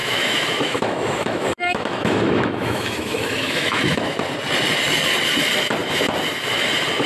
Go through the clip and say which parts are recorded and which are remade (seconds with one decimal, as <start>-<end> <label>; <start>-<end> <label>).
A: 0.0-4.2 remade; 4.2-7.1 recorded